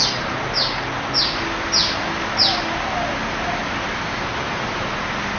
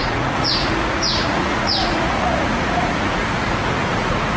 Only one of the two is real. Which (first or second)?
first